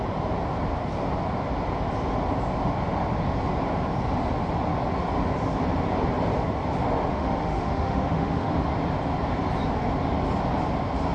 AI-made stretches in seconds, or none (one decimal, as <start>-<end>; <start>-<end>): 7.1-8.5